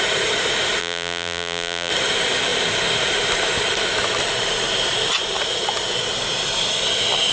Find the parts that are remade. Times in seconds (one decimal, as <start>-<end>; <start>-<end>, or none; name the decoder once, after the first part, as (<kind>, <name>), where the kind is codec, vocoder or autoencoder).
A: 0.8-1.9 (vocoder, BigVGAN v2)